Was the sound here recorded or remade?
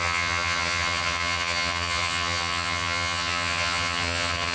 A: remade